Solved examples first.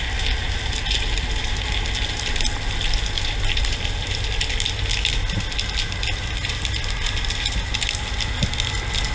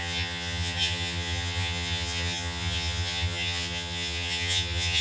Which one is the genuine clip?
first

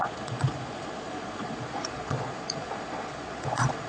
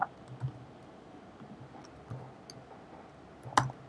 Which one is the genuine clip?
second